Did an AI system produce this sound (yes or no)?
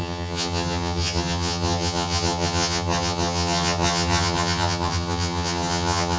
yes